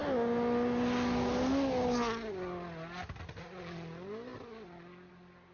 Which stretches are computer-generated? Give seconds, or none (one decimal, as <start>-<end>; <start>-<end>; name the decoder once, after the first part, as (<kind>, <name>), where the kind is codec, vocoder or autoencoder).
none